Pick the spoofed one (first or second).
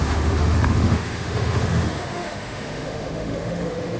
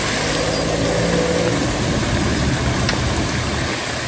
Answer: first